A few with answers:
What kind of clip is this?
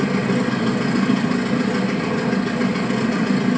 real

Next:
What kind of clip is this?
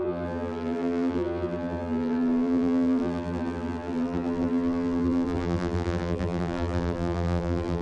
fake